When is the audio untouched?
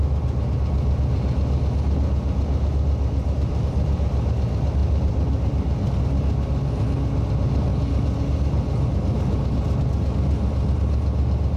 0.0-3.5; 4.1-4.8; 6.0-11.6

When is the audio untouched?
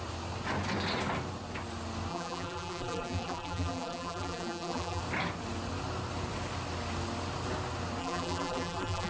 0.0-2.1; 5.0-8.0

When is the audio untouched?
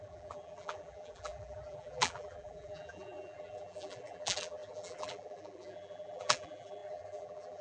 none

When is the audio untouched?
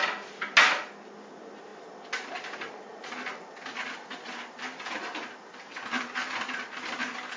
0.0-7.4